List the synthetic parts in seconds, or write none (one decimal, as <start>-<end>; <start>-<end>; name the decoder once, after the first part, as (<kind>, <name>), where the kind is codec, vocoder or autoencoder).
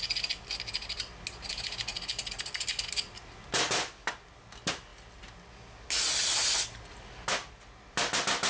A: none